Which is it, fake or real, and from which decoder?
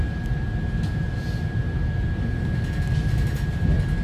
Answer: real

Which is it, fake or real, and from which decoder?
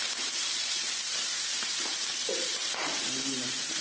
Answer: fake, vocoder, BigVGAN v2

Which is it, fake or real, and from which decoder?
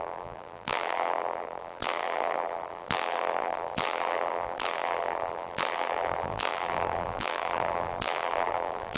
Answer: fake, vocoder, BigVGAN v2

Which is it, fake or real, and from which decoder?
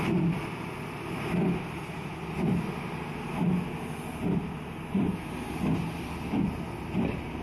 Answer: real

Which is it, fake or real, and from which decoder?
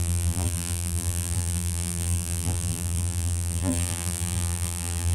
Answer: fake, vocoder, BigVGAN v2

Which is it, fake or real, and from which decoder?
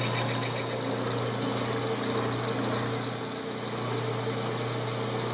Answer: real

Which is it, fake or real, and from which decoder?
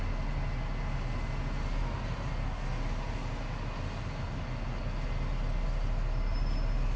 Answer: real